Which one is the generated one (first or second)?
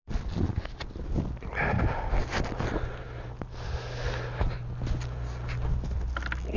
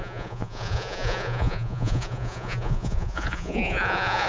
second